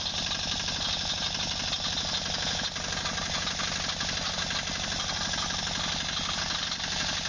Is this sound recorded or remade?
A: recorded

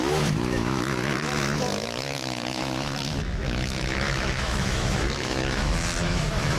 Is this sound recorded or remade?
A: remade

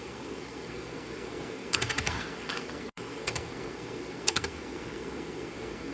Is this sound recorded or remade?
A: remade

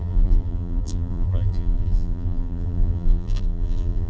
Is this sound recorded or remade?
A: remade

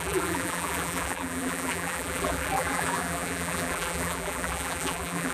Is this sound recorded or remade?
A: remade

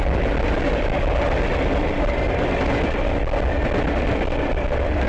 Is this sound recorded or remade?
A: recorded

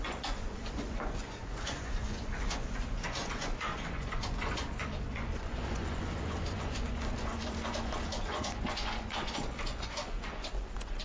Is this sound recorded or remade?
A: remade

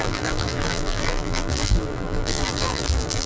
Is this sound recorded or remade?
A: remade